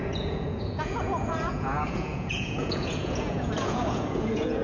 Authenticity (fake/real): fake